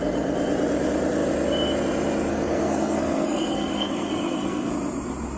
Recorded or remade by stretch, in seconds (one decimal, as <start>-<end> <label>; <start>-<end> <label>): 0.0-2.3 recorded; 2.3-4.7 remade; 4.7-5.4 recorded